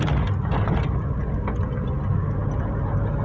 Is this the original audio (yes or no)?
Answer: yes